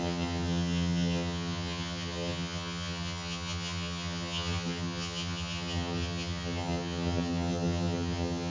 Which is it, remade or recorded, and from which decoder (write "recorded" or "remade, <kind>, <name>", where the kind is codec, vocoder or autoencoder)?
remade, vocoder, HiFi-GAN